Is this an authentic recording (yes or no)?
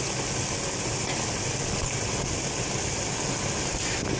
yes